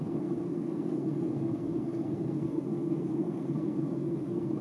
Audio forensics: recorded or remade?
remade